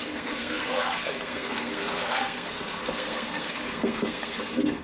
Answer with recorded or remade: remade